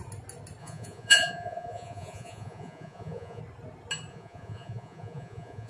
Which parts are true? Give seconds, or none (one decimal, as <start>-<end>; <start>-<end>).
0.0-0.6; 3.4-4.1